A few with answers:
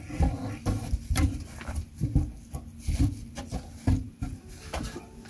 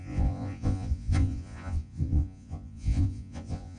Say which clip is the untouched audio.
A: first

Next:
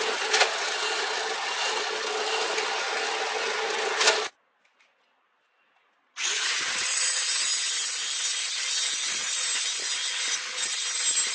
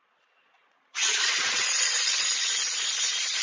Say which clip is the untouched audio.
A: first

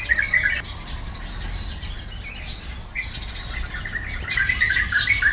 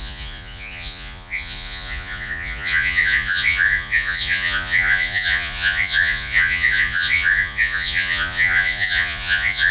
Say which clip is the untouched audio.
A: first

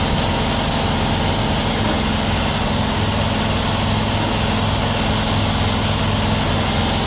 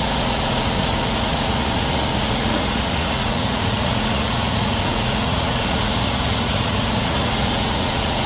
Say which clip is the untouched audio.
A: first